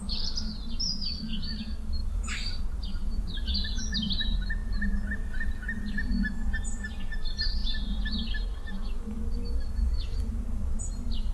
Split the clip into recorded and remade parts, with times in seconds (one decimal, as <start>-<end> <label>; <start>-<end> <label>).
0.0-2.0 recorded; 2.0-2.6 remade; 2.6-11.3 recorded